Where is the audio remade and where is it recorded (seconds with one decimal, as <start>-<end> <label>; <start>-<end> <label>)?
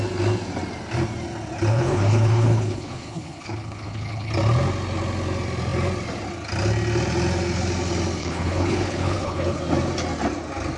0.0-1.7 recorded; 1.7-4.3 remade; 4.3-8.2 recorded; 8.2-9.6 remade; 9.6-10.8 recorded